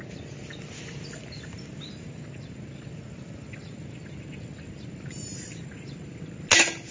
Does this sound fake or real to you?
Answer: real